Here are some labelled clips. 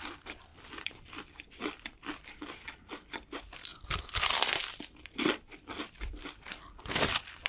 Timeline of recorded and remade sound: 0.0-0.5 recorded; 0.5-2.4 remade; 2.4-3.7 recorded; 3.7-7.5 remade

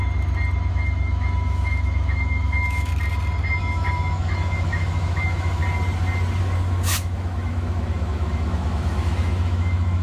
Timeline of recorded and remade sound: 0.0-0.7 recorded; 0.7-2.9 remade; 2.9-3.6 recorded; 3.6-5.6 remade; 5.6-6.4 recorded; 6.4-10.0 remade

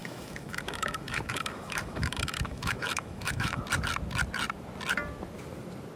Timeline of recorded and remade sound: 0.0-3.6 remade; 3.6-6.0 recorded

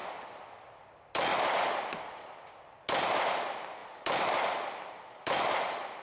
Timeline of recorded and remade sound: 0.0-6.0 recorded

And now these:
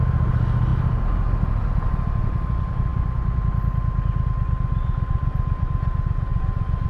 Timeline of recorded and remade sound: 0.0-6.9 recorded